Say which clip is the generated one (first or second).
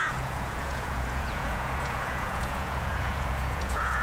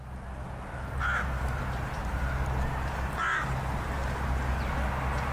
first